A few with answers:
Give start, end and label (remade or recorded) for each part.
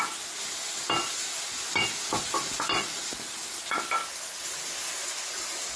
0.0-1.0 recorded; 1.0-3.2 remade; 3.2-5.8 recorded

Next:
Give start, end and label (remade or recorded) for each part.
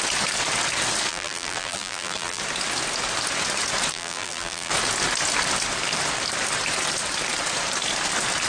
0.0-1.1 recorded; 1.1-2.4 remade; 2.4-3.9 recorded; 3.9-4.7 remade; 4.7-8.5 recorded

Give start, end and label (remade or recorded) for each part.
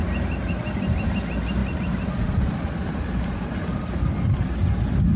0.0-1.6 recorded; 1.6-4.0 remade; 4.0-5.2 recorded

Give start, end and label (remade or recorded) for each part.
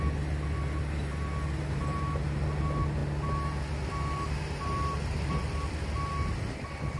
0.0-7.0 recorded